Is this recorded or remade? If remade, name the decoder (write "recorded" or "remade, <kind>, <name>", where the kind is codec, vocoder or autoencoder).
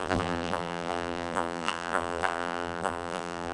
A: remade, vocoder, BigVGAN v2